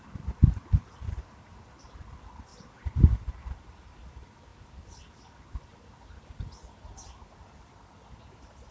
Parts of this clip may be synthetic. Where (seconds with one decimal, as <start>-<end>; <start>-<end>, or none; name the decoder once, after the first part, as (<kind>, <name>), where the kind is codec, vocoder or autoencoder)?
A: 0.0-2.5 (vocoder, BigVGAN v2); 3.6-4.5; 6.9-8.7